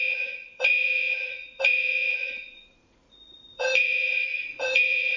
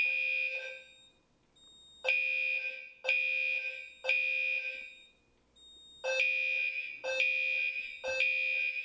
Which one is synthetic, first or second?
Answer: first